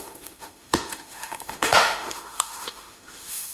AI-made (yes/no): yes